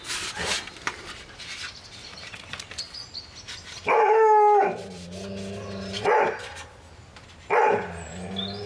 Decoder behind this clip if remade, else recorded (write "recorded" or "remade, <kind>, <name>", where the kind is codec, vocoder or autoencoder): recorded